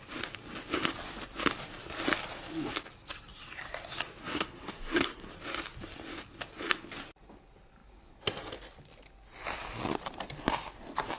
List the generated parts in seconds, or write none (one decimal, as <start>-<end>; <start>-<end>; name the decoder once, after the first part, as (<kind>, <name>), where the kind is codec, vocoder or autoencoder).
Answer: 4.2-5.3 (codec, SNAC)